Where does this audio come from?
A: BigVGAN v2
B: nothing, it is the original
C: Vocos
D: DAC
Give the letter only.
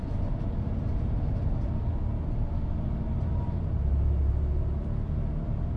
B